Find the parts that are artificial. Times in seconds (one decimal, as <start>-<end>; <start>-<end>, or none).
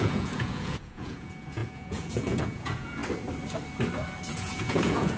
0.0-3.0; 4.3-5.2